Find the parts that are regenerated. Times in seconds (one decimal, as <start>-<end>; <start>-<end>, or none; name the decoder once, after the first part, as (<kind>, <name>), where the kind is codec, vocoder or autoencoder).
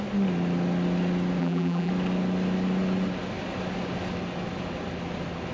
1.4-1.9 (vocoder, BigVGAN v2)